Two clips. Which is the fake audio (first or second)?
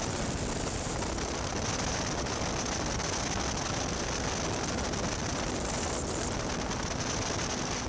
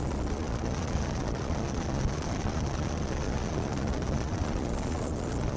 second